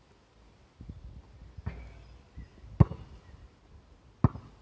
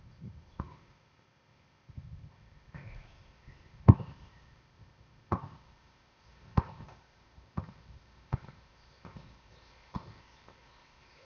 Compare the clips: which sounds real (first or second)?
first